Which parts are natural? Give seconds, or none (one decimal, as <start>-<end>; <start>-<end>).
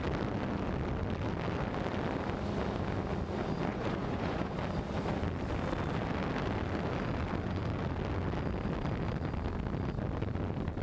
0.0-3.7; 4.6-10.8